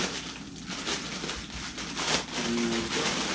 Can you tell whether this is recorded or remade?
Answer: recorded